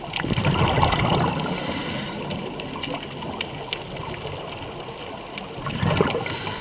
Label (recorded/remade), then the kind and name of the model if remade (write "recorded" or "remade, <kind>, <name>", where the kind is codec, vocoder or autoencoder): recorded